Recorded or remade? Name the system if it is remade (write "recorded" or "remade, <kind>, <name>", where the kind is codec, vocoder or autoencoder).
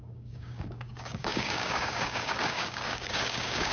remade, codec, DAC